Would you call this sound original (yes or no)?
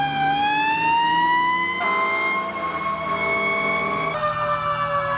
yes